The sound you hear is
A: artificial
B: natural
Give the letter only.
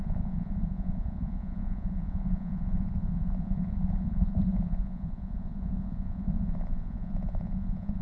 A